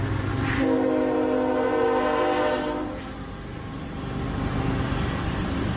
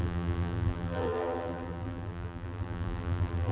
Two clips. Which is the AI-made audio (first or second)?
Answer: second